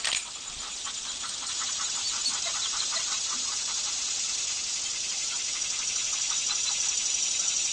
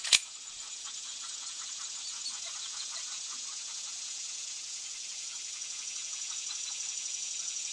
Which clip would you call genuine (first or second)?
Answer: first